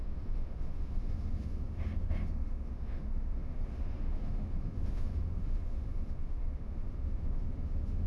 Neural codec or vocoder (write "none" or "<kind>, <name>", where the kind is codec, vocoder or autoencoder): autoencoder, DAC-VAE